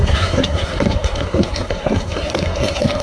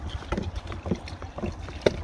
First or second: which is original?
second